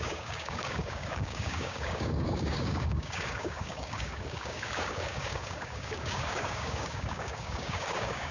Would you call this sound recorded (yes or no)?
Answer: no